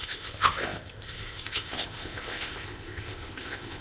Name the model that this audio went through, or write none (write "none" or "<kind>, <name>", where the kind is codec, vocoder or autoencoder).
codec, ZipCodec